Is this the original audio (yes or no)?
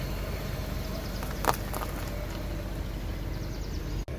yes